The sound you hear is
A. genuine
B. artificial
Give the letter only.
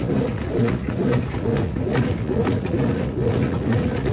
B